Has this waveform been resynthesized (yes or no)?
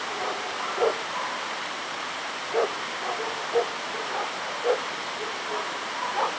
no